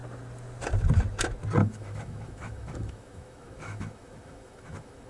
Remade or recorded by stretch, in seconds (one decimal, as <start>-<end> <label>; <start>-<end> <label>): 0.0-1.6 recorded; 1.6-5.1 remade